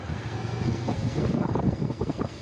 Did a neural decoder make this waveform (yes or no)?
yes